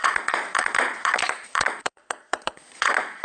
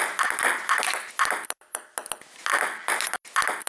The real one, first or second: second